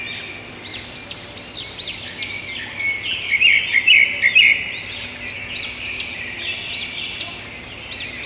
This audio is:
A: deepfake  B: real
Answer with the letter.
B